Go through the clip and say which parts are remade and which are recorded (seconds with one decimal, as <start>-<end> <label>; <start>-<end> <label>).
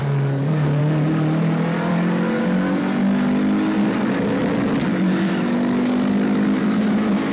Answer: 0.0-0.8 remade; 0.8-1.9 recorded; 1.9-2.4 remade; 2.4-3.8 recorded; 3.8-4.5 remade; 4.5-4.9 recorded; 4.9-6.6 remade; 6.6-7.3 recorded